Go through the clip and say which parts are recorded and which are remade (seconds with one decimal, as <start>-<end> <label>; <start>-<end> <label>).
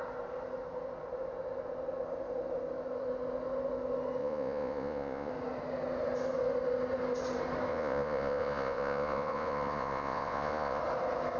0.0-4.2 recorded; 4.2-5.3 remade; 5.3-7.7 recorded; 7.7-10.8 remade; 10.8-11.4 recorded